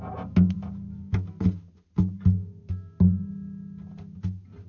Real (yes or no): yes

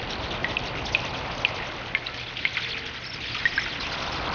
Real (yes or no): yes